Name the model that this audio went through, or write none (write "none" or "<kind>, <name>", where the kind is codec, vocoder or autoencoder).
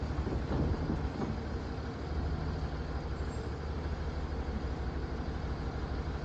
none